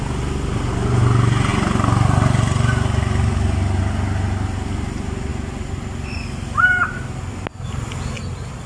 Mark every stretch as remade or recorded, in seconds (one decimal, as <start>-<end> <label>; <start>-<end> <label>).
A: 0.0-8.7 recorded